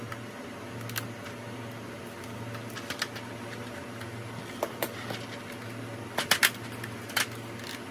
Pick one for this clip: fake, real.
real